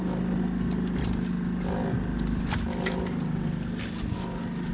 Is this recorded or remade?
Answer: recorded